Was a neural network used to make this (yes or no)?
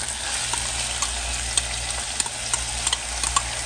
no